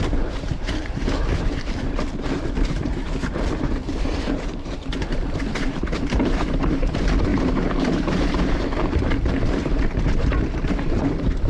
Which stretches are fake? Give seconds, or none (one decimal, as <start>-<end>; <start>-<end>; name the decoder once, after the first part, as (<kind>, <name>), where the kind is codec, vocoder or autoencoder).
0.0-11.5 (vocoder, BigVGAN v2)